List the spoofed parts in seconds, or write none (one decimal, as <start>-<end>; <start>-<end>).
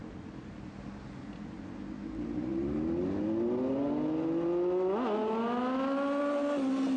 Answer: none